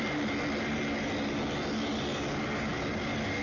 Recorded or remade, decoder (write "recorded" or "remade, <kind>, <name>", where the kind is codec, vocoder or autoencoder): recorded